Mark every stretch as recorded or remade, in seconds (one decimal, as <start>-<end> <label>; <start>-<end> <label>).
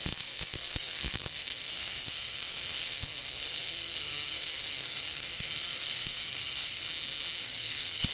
0.0-6.8 remade; 6.8-7.4 recorded; 7.4-8.1 remade